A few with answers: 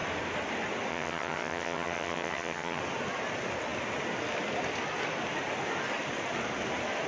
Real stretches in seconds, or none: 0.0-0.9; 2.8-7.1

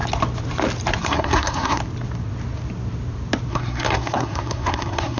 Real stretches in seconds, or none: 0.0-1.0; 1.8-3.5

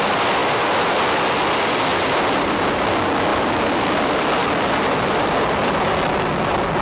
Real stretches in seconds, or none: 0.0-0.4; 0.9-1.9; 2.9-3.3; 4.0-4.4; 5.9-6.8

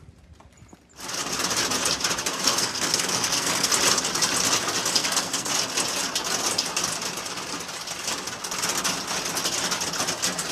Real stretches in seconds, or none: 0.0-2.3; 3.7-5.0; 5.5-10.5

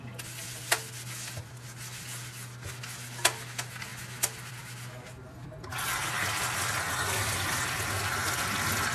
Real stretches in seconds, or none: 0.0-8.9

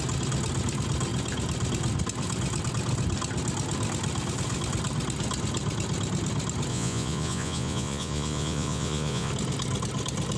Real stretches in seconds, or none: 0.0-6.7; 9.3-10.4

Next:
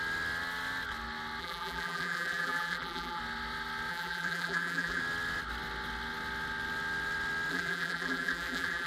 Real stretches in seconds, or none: 0.0-1.4; 3.2-3.9; 5.0-7.5